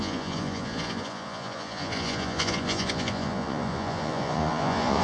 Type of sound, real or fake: fake